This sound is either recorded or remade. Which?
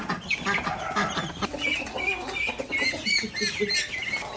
recorded